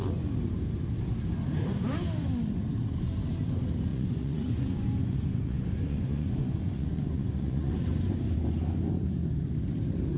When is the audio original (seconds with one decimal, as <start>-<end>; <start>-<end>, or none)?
0.0-3.9; 7.7-10.2